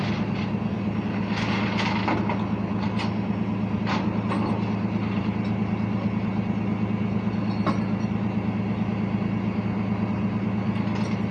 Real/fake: real